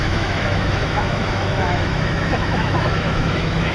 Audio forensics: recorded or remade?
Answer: remade